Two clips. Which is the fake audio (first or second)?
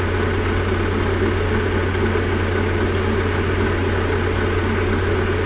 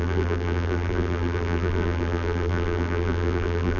second